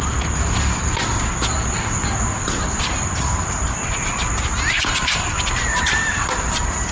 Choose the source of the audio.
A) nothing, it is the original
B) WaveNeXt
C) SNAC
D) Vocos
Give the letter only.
A